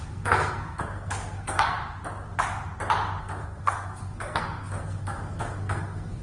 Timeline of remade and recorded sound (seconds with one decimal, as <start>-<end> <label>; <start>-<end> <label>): 0.0-1.8 remade; 1.8-3.2 recorded; 3.2-6.2 remade